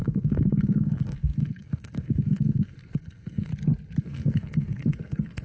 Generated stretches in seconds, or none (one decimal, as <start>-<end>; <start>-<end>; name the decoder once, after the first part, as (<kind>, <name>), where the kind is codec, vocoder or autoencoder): 0.0-3.5 (codec, SNAC); 4.0-5.4